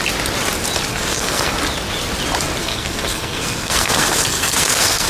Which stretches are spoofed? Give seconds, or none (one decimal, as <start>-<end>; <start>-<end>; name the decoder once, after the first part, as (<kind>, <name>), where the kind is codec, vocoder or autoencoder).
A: 0.9-1.5 (codec, SNAC); 2.6-5.1